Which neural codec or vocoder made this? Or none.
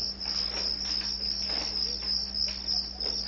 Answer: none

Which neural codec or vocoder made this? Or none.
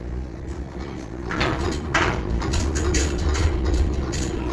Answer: vocoder, Vocos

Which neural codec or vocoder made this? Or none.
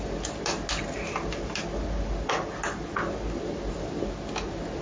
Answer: none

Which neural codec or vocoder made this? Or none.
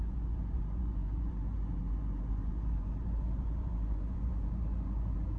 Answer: vocoder, Vocos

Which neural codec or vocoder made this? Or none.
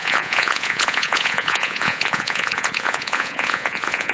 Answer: vocoder, Vocos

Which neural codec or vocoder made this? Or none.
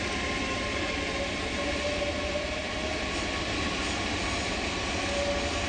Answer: none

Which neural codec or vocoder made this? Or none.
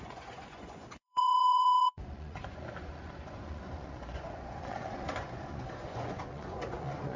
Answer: vocoder, Vocos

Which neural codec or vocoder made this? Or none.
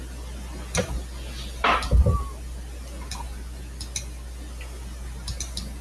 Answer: none